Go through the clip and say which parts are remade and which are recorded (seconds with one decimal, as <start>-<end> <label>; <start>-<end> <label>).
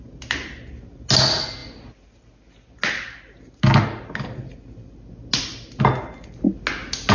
0.0-7.1 recorded